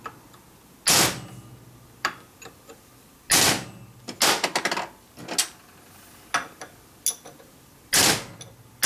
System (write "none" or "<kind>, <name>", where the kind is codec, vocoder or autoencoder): none